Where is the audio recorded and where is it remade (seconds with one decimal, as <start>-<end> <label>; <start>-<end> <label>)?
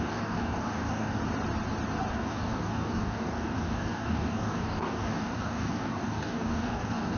0.0-1.2 remade; 1.2-2.1 recorded; 2.1-7.2 remade